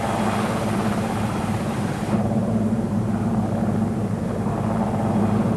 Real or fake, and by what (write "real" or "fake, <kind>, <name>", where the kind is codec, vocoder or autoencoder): fake, vocoder, BigVGAN v2